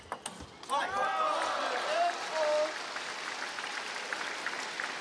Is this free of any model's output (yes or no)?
yes